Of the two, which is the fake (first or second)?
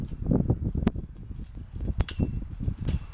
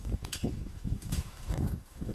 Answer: second